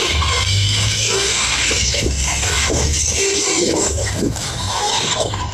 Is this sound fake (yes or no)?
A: yes